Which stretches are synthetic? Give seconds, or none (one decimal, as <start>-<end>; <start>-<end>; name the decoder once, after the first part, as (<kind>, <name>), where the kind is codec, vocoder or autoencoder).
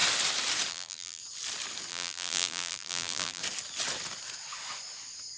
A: 0.7-1.2 (vocoder, BigVGAN v2); 1.9-3.4